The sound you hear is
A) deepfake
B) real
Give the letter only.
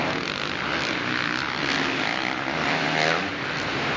B